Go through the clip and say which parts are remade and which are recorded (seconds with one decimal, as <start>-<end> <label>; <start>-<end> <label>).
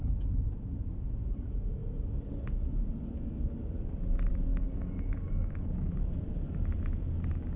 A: 0.0-4.5 recorded; 4.5-5.9 remade; 5.9-7.6 recorded